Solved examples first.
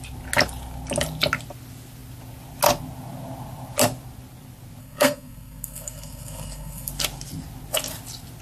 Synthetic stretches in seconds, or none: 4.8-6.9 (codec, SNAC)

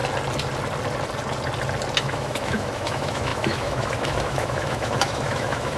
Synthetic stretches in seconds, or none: 2.0-5.8 (autoencoder, DAC-VAE)

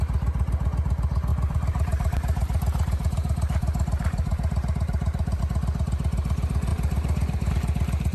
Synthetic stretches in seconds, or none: 1.3-5.4 (vocoder, BigVGAN v2); 6.7-7.5

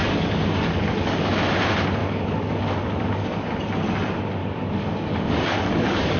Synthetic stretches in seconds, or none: 0.0-1.4 (codec, DAC); 2.0-3.5; 4.4-6.2

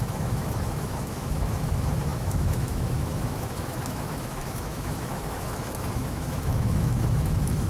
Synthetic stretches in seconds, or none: 0.0-7.7 (autoencoder, DAC-VAE)

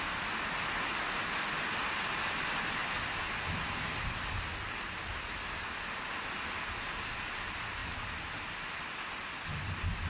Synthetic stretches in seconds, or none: 7.8-8.5 (vocoder, BigVGAN v2)

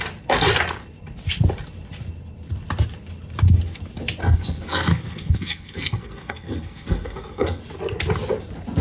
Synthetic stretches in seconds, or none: 4.2-7.6 (codec, SNAC)

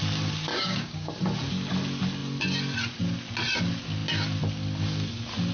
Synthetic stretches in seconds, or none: 0.5-1.1 (codec, DAC)